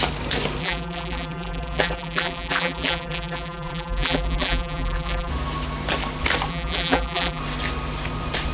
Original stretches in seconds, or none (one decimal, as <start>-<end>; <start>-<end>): 0.0-0.6; 5.3-6.5; 7.4-8.5